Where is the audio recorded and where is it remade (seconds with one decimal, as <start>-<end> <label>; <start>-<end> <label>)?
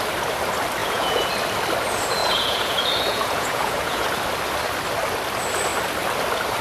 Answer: 0.0-0.8 recorded; 0.8-1.3 remade; 1.3-2.2 recorded; 2.2-4.1 remade; 4.1-6.6 recorded